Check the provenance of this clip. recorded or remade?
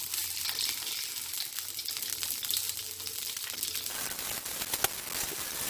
recorded